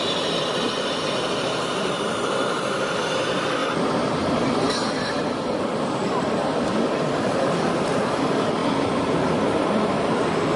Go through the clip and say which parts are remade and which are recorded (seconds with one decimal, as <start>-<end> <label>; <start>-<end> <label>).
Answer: 0.0-3.6 remade; 3.6-4.4 recorded; 4.4-10.6 remade